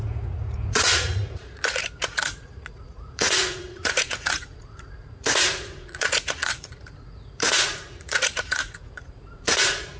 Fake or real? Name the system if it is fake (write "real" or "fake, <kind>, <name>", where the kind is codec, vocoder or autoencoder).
fake, vocoder, Vocos